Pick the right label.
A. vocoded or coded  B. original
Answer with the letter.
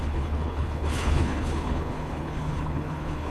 A